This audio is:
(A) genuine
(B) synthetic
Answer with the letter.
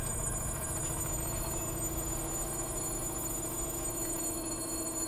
B